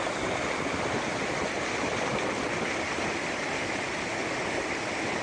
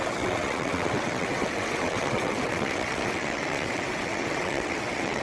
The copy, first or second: second